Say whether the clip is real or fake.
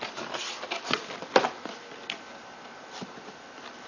real